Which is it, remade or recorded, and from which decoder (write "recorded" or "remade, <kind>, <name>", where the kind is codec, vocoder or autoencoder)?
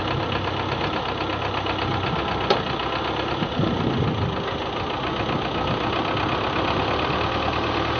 recorded